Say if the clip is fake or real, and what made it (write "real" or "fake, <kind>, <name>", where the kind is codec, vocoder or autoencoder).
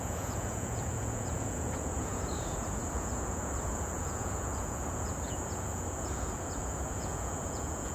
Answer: fake, vocoder, Vocos